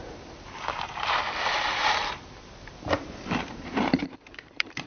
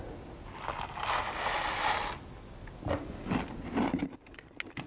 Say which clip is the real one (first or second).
second